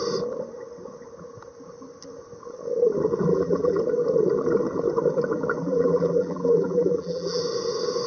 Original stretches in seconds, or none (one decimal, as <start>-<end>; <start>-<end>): 0.0-3.3; 3.8-5.6; 7.4-8.1